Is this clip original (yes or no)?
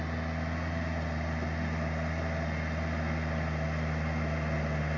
yes